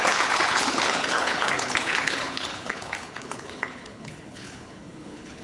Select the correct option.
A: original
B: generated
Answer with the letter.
B